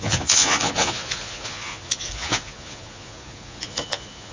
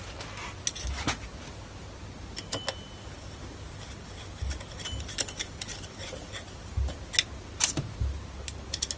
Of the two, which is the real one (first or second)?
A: second